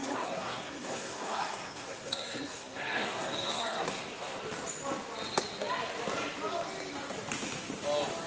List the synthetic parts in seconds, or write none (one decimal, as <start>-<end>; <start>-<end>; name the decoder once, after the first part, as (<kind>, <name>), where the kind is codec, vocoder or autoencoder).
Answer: 0.0-4.4 (codec, SNAC)